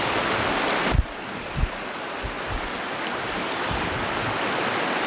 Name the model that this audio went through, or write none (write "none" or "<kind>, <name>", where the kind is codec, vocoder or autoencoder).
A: none